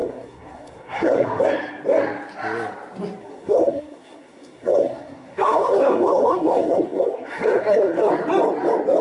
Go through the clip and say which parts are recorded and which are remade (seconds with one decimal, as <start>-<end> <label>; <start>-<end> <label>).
0.0-1.4 remade; 1.4-3.2 recorded; 3.2-8.1 remade; 8.1-9.0 recorded